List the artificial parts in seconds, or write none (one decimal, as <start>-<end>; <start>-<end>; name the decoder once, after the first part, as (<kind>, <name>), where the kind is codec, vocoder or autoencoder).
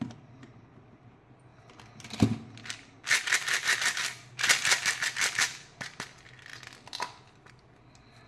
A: none